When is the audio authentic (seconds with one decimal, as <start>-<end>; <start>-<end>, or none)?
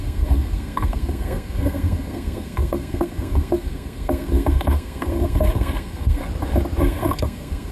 6.2-6.8